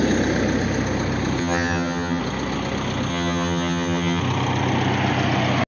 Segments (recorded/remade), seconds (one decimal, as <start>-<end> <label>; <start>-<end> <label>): 0.0-1.4 recorded; 1.4-2.2 remade; 2.2-3.1 recorded; 3.1-4.2 remade; 4.2-5.7 recorded